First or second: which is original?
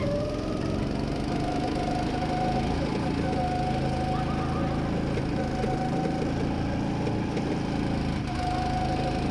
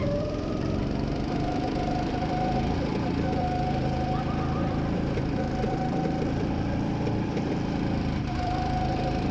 first